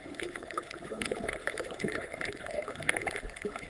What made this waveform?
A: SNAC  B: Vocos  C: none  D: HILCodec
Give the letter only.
D